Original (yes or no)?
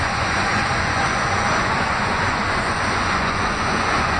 no